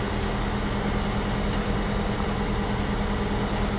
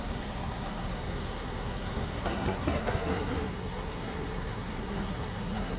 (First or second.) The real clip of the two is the first